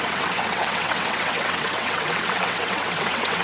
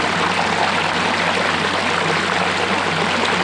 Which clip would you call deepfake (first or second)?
first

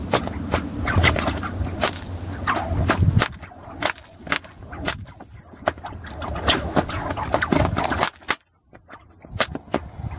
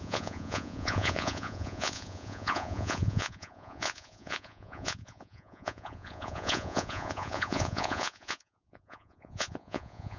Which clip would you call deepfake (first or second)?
second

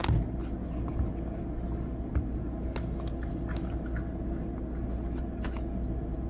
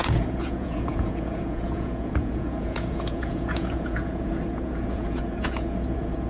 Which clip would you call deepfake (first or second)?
second